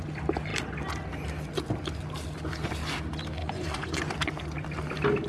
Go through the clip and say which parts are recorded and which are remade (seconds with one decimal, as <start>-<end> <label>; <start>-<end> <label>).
0.0-3.4 recorded; 3.4-4.0 remade; 4.0-5.3 recorded